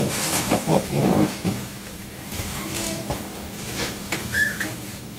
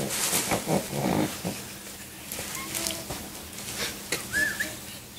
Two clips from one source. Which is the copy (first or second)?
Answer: first